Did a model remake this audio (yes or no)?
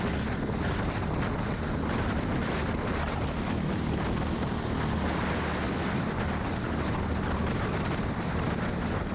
no